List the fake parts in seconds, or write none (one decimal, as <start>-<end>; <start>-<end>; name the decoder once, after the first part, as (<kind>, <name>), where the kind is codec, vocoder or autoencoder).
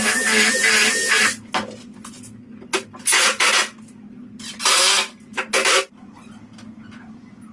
none